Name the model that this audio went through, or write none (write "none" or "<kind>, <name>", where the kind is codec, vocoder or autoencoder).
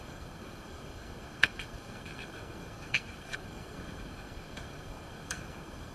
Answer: codec, SNAC